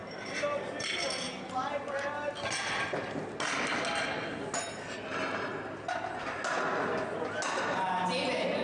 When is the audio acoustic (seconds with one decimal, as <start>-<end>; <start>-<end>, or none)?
0.0-8.6